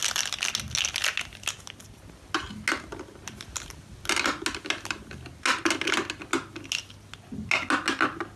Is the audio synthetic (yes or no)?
no